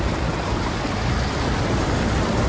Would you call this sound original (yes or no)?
yes